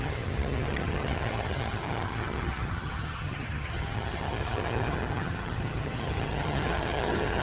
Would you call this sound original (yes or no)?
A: no